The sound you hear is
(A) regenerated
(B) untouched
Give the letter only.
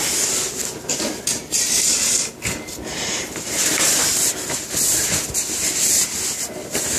B